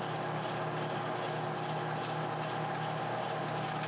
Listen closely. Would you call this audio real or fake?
real